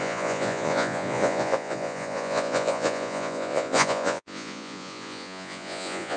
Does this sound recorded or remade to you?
remade